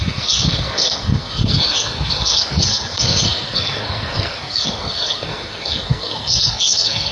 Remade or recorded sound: remade